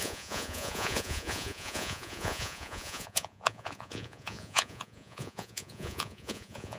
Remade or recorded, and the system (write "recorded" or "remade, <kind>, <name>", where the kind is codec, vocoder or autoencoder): remade, vocoder, Vocos